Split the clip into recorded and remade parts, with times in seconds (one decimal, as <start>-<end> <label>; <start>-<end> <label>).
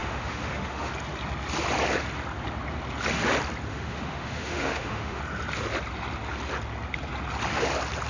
0.0-0.9 remade; 0.9-3.7 recorded; 3.7-5.2 remade; 5.2-8.1 recorded